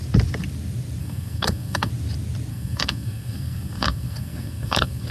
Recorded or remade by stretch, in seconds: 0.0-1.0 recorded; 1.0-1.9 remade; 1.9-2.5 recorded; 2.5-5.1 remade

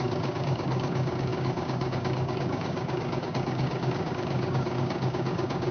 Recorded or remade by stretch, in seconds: 0.0-5.7 remade

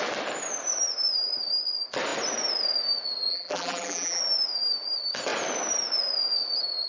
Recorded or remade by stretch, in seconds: 0.0-3.3 recorded; 3.3-4.2 remade; 4.2-6.9 recorded

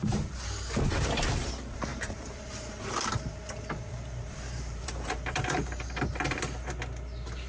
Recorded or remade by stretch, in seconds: 0.0-1.9 recorded; 1.9-6.4 remade; 6.4-7.5 recorded

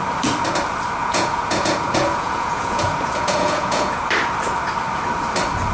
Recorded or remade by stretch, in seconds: 0.0-1.0 recorded; 1.0-4.0 remade; 4.0-5.7 recorded

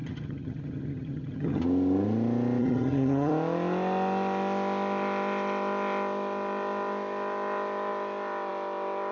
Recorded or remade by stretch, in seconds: 0.0-1.6 remade; 1.6-2.6 recorded; 2.6-3.3 remade; 3.3-9.1 recorded

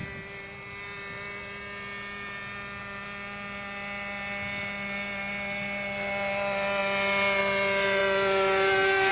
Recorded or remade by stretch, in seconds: 0.0-9.1 recorded

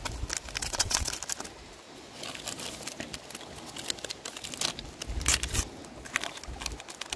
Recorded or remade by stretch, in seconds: 0.0-0.6 recorded; 0.6-1.1 remade; 1.1-7.2 recorded